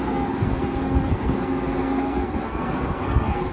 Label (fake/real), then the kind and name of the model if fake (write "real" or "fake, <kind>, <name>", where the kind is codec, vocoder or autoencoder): fake, codec, SNAC